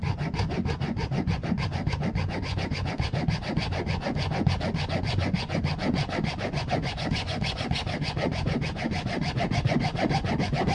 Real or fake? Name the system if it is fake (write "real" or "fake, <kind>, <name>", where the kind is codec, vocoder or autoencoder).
fake, vocoder, Vocos